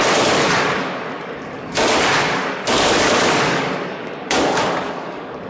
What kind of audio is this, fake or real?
fake